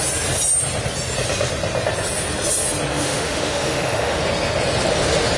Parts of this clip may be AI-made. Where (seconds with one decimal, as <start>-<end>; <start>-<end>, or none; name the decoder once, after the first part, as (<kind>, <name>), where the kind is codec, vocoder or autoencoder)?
2.9-4.2 (autoencoder, DAC-VAE)